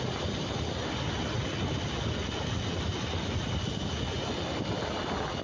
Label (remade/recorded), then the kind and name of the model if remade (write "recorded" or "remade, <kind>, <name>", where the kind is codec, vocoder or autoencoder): recorded